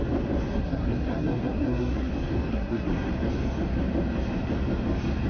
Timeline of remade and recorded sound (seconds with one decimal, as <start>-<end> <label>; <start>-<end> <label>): 0.0-0.5 recorded; 0.5-2.1 remade; 2.1-2.5 recorded; 2.5-3.1 remade; 3.1-5.3 recorded